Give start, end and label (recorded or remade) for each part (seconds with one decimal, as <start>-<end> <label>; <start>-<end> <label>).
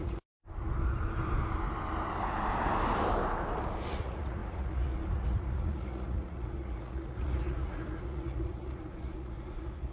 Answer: 0.0-0.4 remade; 0.4-3.9 recorded; 3.9-9.9 remade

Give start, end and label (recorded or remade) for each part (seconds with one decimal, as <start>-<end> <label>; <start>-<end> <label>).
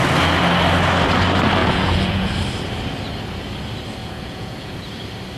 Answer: 0.0-1.6 recorded; 1.6-2.3 remade; 2.3-4.0 recorded; 4.0-4.7 remade; 4.7-5.4 recorded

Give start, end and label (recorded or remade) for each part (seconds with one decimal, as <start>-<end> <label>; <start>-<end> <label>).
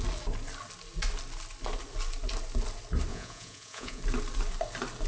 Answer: 0.0-3.1 recorded; 3.1-4.0 remade; 4.0-5.1 recorded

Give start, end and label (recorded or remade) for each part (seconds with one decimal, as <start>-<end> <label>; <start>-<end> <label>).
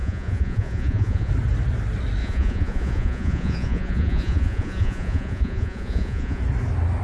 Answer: 0.0-1.3 remade; 1.3-2.2 recorded; 2.2-6.4 remade; 6.4-7.0 recorded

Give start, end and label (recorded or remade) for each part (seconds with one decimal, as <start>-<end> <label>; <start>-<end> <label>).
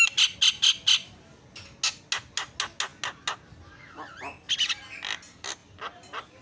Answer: 0.0-6.4 recorded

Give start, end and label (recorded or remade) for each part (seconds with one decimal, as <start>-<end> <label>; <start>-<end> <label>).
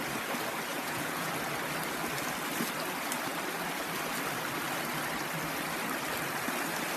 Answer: 0.0-0.7 recorded; 0.7-1.3 remade; 1.3-7.0 recorded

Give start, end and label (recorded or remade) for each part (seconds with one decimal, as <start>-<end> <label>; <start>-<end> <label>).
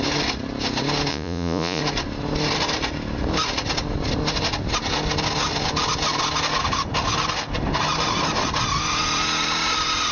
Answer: 0.0-1.1 recorded; 1.1-1.8 remade; 1.8-10.1 recorded